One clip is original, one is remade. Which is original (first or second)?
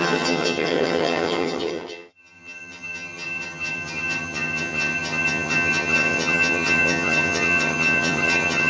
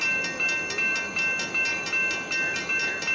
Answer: second